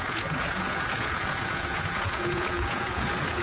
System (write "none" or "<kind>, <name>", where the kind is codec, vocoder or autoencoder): vocoder, Vocos